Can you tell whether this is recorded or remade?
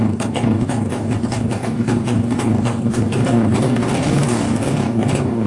remade